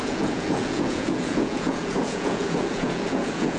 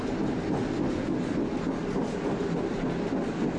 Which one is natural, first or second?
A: second